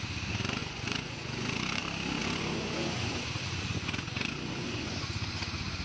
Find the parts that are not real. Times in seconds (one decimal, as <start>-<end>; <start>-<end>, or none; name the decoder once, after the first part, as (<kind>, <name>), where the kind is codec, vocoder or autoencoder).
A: 0.6-1.8 (vocoder, Vocos); 2.2-5.8